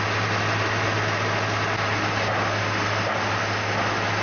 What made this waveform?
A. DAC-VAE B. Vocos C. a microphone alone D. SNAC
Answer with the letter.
C